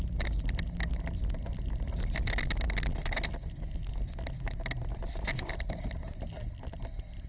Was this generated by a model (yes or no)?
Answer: no